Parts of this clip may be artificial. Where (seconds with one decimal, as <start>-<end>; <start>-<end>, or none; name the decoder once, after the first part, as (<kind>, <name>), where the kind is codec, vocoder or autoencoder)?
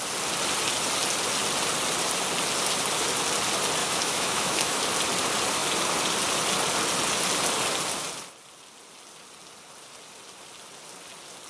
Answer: 3.8-4.8 (autoencoder, DAC-VAE)